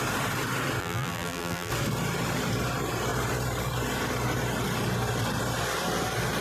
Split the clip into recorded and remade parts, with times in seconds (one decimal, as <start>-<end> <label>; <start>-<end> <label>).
0.0-0.8 recorded; 0.8-1.7 remade; 1.7-6.4 recorded